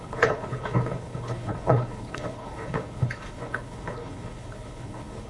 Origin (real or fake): fake